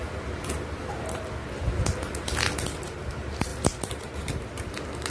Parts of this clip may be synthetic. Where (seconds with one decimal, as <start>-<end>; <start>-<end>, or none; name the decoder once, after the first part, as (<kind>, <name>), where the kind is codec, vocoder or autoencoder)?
3.1-3.5 (vocoder, BigVGAN v2); 4.0-5.1